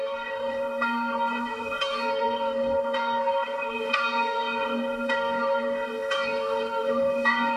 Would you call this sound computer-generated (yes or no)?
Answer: yes